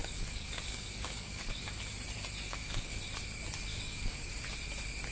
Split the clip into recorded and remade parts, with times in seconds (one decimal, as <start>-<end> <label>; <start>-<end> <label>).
0.0-1.8 remade; 1.8-2.5 recorded; 2.5-3.0 remade; 3.0-3.7 recorded; 3.7-4.3 remade; 4.3-5.1 recorded